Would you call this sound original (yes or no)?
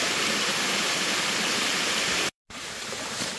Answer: no